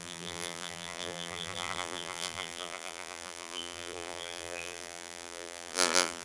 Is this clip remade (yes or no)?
yes